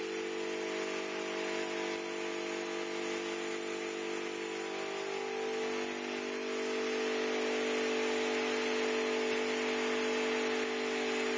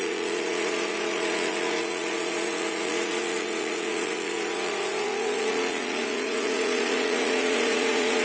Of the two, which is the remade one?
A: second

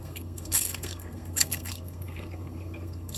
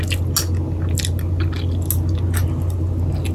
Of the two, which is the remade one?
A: first